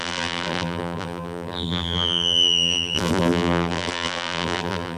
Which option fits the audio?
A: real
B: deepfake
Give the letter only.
B